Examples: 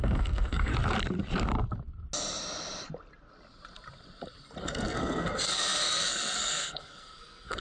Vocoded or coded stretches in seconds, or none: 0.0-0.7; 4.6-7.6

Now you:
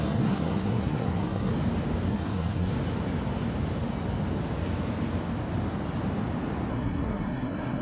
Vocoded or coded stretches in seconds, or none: 0.0-1.5; 2.1-2.7; 6.7-7.8

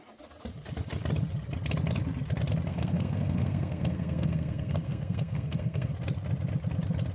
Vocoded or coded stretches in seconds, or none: 2.7-5.9